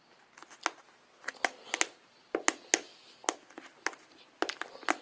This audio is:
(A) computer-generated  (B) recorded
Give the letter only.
B